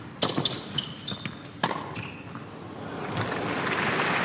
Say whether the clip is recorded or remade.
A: recorded